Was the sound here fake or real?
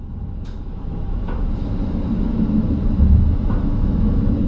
fake